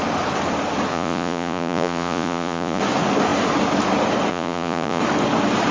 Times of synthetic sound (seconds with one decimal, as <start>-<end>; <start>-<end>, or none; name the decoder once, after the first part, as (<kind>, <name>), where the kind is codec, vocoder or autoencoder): 0.9-2.8 (vocoder, Vocos); 4.3-5.0